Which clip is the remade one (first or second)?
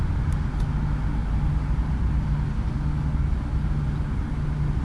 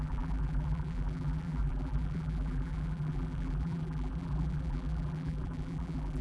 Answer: second